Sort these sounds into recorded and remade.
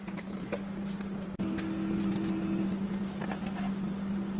recorded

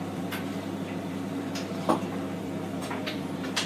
remade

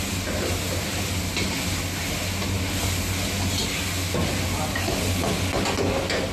recorded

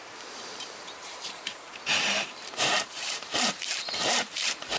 remade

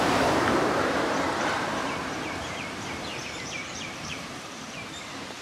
remade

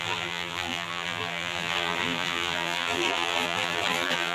remade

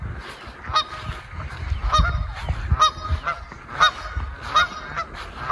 recorded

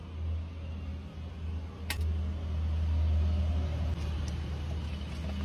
recorded